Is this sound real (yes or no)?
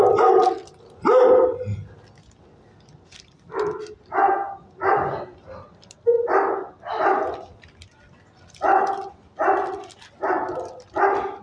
yes